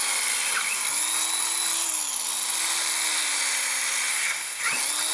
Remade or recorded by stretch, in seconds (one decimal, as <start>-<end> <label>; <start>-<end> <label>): 0.0-4.1 recorded; 4.1-4.6 remade; 4.6-5.1 recorded